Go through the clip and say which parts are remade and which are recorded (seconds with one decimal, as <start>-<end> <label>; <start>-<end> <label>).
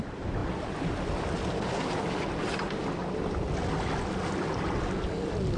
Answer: 0.0-5.6 recorded